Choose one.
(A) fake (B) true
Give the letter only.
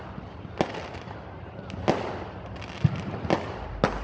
B